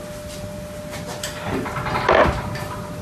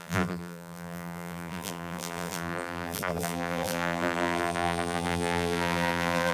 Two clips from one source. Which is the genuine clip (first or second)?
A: first